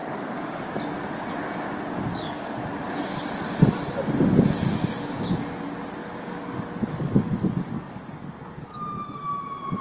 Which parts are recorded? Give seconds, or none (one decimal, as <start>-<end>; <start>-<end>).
0.6-2.1; 2.6-6.0; 8.8-9.8